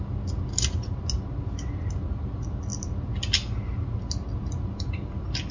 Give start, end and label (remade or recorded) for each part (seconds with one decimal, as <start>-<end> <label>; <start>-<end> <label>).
0.0-5.5 recorded